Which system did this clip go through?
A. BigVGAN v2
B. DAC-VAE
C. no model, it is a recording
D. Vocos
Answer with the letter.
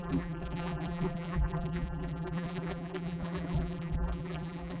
A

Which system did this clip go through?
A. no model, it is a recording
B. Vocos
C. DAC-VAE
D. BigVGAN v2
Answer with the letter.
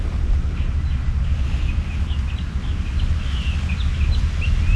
A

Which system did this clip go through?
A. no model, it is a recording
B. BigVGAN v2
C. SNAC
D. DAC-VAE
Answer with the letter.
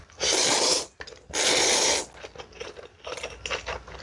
A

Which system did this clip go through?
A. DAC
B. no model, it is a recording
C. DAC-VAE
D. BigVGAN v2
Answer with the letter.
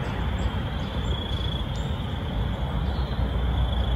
B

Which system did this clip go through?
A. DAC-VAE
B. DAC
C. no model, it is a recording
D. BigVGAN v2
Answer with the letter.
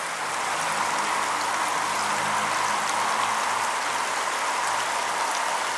C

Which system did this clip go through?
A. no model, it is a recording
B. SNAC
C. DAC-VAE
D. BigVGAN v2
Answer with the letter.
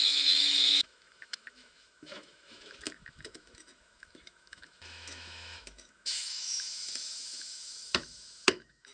C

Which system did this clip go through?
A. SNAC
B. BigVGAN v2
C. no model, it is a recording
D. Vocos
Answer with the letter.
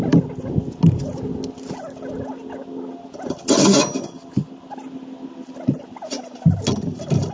C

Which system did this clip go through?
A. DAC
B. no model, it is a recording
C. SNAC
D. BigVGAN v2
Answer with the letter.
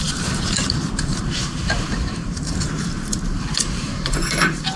D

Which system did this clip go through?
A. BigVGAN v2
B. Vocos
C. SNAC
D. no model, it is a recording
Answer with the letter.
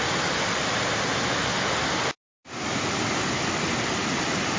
D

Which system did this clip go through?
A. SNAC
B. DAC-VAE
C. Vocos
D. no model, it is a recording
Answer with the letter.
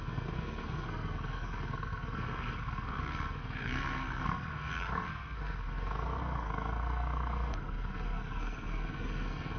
A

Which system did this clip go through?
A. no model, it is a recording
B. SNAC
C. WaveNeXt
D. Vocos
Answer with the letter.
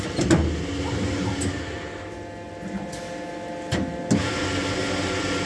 A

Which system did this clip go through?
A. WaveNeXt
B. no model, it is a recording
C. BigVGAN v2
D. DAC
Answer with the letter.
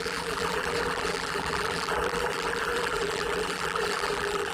C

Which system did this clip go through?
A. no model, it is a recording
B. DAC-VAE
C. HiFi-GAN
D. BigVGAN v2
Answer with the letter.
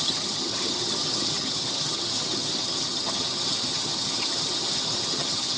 C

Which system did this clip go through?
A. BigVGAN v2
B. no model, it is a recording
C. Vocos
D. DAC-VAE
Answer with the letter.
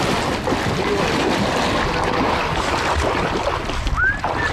B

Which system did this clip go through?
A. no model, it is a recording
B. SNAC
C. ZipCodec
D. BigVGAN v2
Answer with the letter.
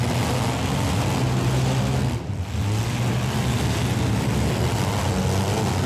A